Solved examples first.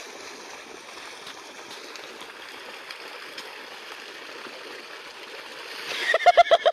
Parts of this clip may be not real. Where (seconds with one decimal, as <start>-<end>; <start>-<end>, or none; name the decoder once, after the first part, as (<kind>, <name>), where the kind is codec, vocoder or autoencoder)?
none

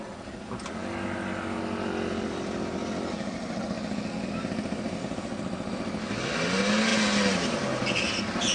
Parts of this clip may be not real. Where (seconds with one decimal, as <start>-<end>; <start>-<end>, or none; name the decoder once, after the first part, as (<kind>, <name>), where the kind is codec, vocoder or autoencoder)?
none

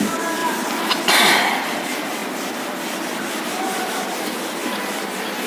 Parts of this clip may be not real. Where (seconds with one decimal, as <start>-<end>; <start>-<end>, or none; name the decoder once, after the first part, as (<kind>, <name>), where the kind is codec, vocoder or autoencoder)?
0.0-0.4 (vocoder, BigVGAN v2); 1.1-4.6